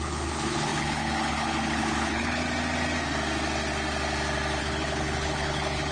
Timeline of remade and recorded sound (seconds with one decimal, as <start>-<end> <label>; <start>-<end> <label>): 0.0-2.4 remade; 2.4-4.6 recorded; 4.6-5.9 remade